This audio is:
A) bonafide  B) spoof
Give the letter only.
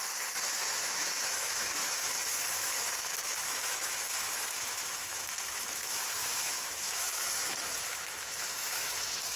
B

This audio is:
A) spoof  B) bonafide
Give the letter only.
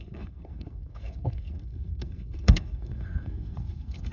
A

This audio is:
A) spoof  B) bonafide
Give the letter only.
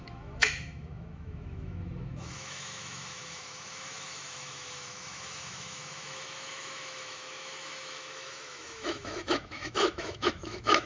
A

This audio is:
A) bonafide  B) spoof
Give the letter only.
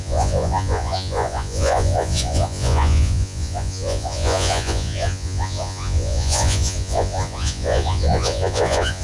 B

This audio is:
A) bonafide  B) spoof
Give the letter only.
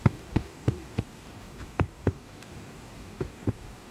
B